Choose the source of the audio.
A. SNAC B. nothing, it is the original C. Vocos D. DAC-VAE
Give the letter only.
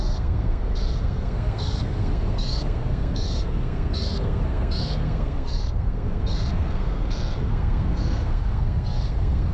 A